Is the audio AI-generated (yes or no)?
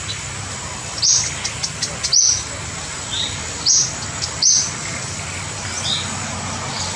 no